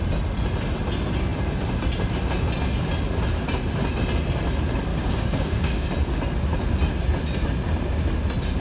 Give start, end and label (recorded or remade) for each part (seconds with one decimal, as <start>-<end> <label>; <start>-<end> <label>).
0.0-4.9 recorded; 4.9-5.9 remade; 5.9-8.6 recorded

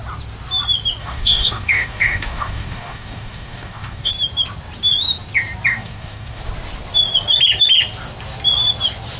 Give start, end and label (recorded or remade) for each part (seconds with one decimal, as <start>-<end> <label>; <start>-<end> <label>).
0.0-1.0 recorded; 1.0-4.1 remade; 4.1-5.7 recorded; 5.7-6.4 remade; 6.4-9.2 recorded